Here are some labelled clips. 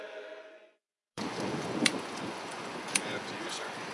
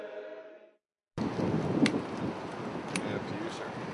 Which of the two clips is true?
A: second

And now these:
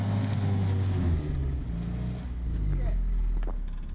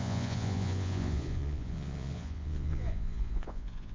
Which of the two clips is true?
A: first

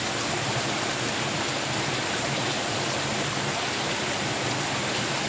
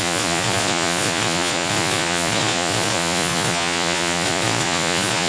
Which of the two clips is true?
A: first